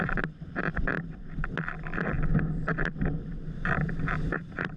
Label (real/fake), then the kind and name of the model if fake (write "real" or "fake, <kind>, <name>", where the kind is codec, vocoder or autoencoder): fake, vocoder, BigVGAN v2